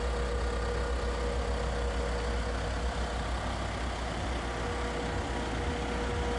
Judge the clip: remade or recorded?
recorded